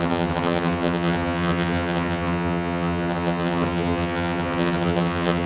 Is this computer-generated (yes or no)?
yes